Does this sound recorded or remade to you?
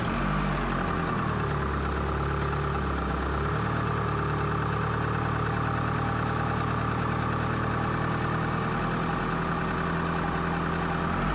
recorded